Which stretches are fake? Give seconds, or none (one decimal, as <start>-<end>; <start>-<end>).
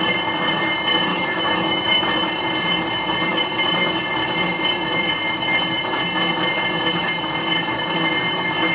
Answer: 1.1-2.0